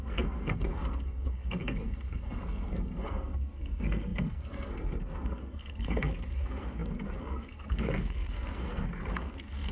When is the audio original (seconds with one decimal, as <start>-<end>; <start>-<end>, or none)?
none